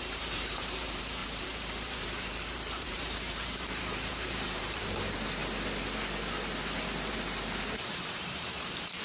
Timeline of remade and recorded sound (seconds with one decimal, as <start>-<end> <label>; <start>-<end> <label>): 0.0-5.4 remade; 5.4-7.1 recorded; 7.1-9.0 remade

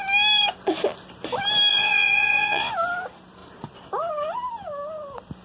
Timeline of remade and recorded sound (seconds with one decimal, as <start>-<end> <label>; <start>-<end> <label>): 0.0-1.7 recorded; 1.7-2.7 remade; 2.7-5.4 recorded

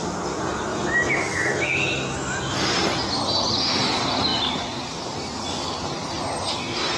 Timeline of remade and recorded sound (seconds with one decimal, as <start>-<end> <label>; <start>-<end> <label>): 0.0-0.7 recorded; 0.7-2.4 remade; 2.4-7.0 recorded

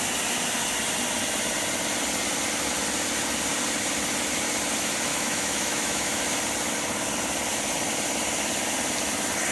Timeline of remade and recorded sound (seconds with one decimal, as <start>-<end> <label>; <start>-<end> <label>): 0.0-5.1 recorded; 5.1-6.2 remade; 6.2-9.5 recorded

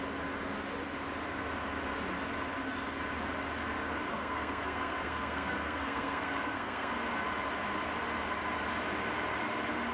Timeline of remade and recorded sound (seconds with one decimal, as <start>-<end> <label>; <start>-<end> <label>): 0.0-4.1 recorded; 4.1-6.9 remade; 6.9-9.9 recorded